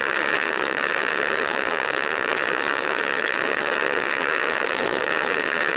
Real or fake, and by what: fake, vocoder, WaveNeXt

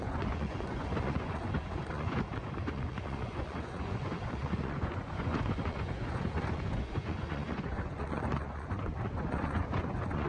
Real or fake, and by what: fake, vocoder, Vocos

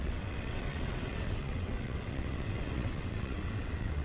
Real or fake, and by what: fake, vocoder, WaveNeXt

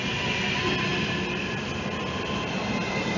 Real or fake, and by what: real